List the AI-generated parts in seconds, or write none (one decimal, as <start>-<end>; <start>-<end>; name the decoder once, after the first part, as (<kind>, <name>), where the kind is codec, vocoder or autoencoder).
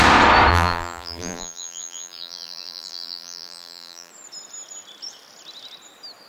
0.5-4.1 (vocoder, BigVGAN v2)